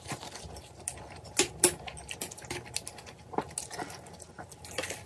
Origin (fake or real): real